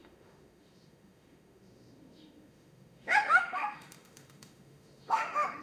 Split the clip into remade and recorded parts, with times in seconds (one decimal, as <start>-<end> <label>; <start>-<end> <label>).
0.0-5.6 remade